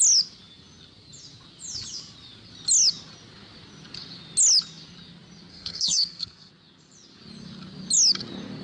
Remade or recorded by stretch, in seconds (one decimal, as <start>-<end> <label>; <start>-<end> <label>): 0.0-5.5 recorded; 5.5-6.5 remade; 6.5-8.6 recorded

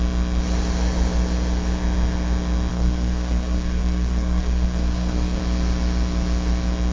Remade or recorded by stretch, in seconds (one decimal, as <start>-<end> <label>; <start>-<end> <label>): 0.0-2.7 recorded; 2.7-5.4 remade; 5.4-6.9 recorded

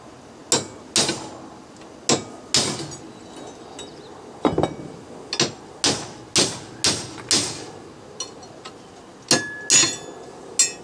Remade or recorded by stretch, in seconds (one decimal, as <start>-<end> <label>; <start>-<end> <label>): 0.0-10.8 recorded

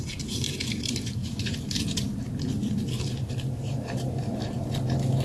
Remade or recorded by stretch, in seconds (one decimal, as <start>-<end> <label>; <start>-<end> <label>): 0.0-5.2 remade

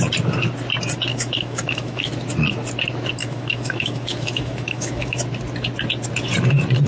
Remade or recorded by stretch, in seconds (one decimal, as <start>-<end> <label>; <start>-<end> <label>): 0.0-1.1 recorded; 1.1-2.1 remade; 2.1-3.2 recorded; 3.2-5.2 remade; 5.2-6.9 recorded

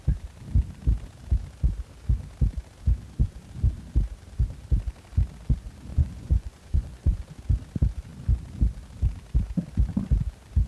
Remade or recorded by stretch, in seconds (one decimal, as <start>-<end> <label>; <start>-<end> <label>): 0.0-5.9 recorded; 5.9-7.2 remade; 7.2-10.7 recorded